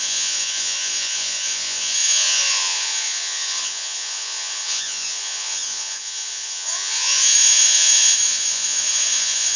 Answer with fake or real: fake